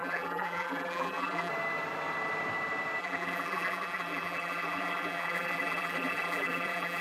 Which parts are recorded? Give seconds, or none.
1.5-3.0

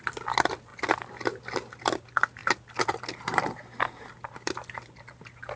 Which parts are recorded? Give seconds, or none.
none